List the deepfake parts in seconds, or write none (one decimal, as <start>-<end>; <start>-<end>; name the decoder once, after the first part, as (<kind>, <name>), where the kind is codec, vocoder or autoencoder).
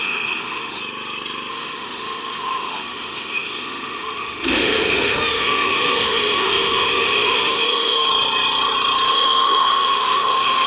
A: 0.0-0.8 (autoencoder, DAC-VAE); 1.5-8.1; 9.1-10.7